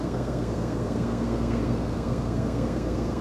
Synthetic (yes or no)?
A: yes